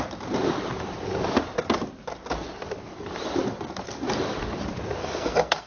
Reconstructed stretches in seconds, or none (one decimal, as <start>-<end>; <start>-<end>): 5.0-5.7